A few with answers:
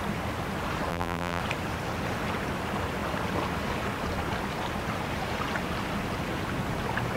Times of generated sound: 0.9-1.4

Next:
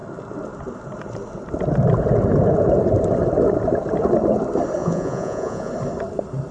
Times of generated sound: 4.8-5.7

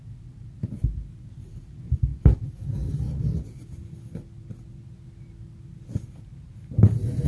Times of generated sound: none

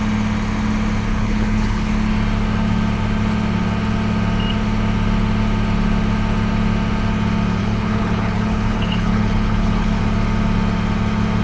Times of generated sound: 1.1-1.9; 7.6-10.0

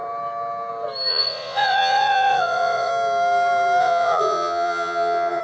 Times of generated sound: 1.1-2.9; 3.8-5.4

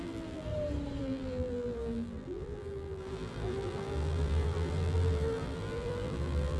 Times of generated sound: 0.0-0.5; 1.0-6.6